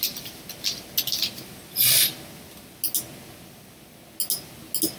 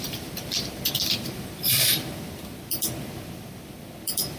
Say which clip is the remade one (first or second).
second